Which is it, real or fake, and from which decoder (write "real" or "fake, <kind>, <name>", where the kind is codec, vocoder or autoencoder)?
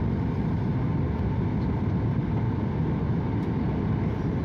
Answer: real